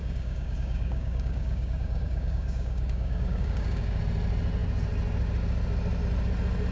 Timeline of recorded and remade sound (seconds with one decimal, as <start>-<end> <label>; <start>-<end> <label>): 0.0-4.0 remade; 4.0-6.7 recorded